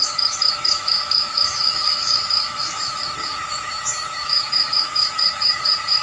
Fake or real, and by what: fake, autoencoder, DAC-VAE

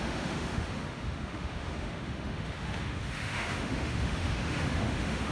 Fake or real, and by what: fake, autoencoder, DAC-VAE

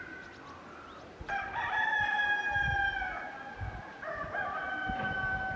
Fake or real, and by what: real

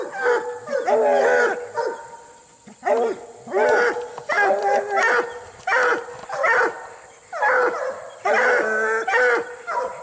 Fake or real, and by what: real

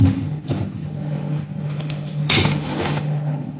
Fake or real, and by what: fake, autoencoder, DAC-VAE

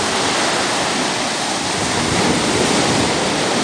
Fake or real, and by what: real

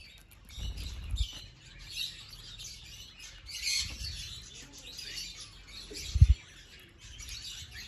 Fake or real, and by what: real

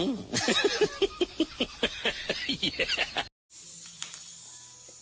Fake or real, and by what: real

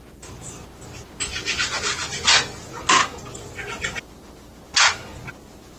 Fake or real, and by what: real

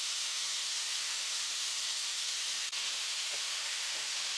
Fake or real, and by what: fake, autoencoder, DAC-VAE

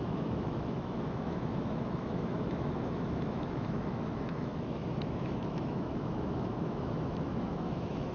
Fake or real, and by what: fake, autoencoder, DAC-VAE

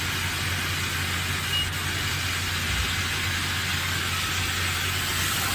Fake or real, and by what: real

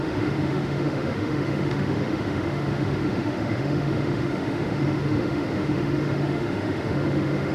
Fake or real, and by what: fake, autoencoder, DAC-VAE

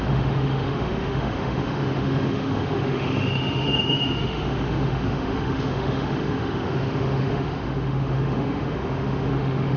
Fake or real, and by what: fake, autoencoder, DAC-VAE